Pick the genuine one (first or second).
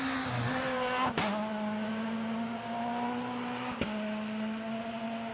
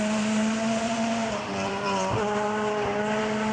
first